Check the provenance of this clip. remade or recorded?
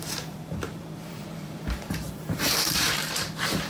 remade